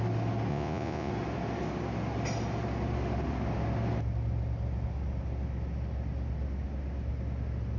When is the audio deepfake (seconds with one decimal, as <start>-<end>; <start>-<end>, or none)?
0.5-1.1